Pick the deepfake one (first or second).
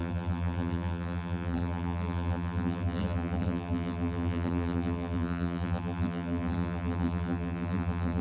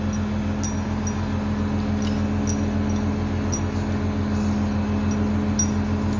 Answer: first